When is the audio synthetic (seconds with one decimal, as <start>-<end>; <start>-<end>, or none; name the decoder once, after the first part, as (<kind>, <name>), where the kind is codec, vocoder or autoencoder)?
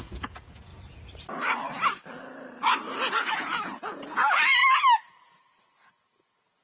0.0-0.7 (vocoder, Vocos); 3.1-4.6; 5.1-6.6